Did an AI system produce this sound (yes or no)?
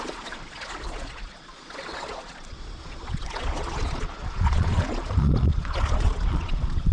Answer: yes